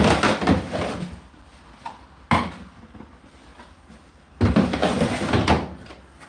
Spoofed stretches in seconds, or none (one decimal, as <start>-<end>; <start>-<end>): none